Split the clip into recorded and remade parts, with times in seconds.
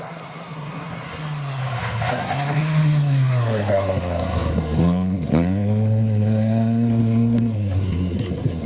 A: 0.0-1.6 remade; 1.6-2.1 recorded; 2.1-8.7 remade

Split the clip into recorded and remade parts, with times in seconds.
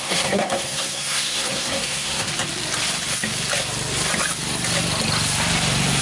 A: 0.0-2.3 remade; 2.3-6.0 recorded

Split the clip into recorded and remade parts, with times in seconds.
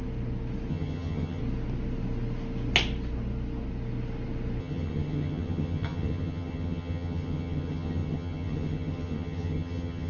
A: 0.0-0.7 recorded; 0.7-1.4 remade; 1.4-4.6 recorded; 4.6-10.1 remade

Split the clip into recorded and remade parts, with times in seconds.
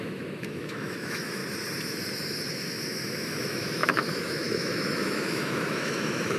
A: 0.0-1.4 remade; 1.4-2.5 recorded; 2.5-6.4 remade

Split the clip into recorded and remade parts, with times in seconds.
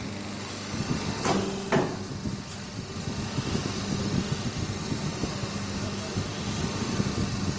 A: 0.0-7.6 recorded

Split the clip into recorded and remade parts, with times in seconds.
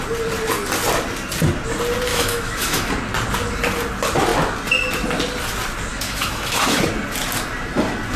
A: 0.0-2.1 recorded; 2.1-2.9 remade; 2.9-5.9 recorded; 5.9-6.8 remade; 6.8-8.2 recorded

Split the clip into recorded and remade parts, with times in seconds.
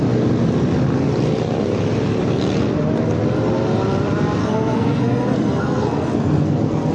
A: 0.0-4.4 recorded; 4.4-6.9 remade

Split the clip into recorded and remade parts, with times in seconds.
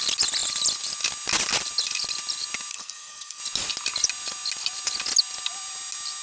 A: 0.0-2.7 recorded; 2.7-3.4 remade; 3.4-6.2 recorded